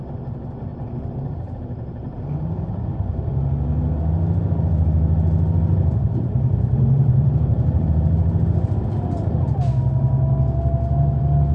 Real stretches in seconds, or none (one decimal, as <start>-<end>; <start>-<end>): 0.0-0.7; 3.5-5.7; 7.9-11.5